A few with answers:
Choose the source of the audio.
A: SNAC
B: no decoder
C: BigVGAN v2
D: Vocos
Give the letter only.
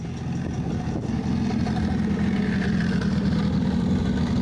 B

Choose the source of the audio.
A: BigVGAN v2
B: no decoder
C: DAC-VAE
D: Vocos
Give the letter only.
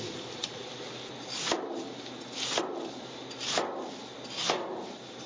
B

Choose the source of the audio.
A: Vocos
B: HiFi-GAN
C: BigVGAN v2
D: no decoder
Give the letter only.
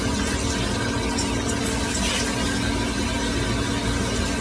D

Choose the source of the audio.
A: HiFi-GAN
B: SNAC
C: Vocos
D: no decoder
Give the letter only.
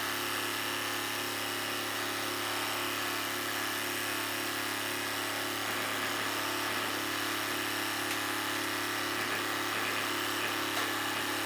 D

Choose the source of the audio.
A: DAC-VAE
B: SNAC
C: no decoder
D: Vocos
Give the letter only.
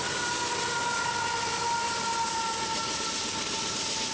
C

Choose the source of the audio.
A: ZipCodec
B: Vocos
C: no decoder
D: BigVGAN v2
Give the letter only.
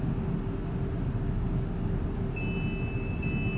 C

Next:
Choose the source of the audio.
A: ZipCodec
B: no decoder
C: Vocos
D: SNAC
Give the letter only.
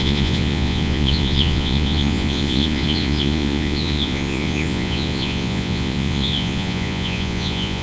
C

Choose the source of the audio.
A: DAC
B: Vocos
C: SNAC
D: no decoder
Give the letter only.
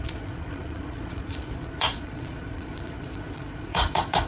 B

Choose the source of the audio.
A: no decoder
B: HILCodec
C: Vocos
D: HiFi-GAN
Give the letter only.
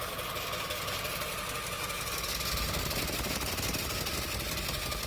A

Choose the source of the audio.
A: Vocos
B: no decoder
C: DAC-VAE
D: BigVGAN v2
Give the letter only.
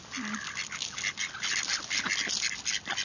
B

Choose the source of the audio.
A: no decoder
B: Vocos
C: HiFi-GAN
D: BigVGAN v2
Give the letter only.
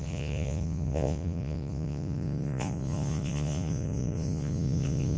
B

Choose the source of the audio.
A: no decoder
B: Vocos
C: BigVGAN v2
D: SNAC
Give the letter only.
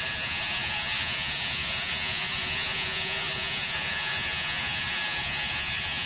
B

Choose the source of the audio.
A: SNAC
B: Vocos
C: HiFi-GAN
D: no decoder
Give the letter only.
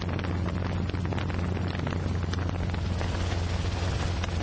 D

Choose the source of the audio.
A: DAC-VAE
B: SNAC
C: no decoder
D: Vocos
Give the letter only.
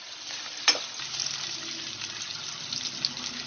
C